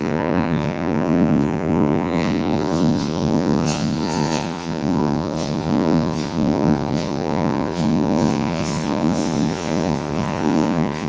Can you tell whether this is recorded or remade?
remade